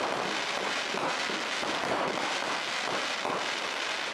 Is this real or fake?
real